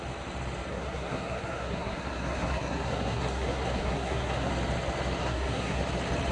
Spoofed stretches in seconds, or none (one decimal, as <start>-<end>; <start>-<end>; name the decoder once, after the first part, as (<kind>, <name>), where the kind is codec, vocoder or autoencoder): 0.7-4.5 (codec, SNAC); 5.2-5.8